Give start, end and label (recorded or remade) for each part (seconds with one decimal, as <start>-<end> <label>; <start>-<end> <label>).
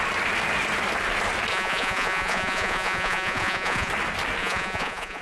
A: 0.0-1.5 recorded; 1.5-3.9 remade; 3.9-4.4 recorded; 4.4-5.2 remade